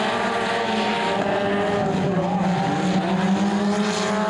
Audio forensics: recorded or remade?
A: recorded